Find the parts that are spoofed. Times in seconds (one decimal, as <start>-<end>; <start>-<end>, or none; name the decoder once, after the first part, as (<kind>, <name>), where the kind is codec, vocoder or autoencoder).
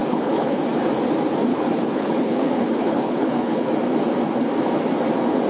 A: 0.0-0.6 (codec, HILCodec); 1.5-3.7